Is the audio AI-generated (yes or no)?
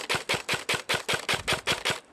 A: no